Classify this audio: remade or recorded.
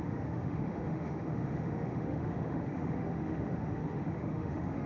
remade